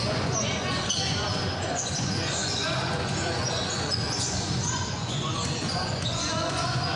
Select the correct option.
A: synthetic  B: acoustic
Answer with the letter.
A